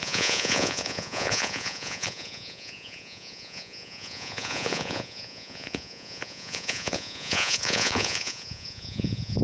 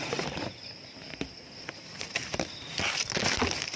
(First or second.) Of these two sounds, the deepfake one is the first